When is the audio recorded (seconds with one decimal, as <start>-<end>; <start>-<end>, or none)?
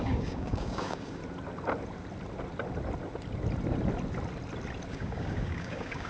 1.2-4.9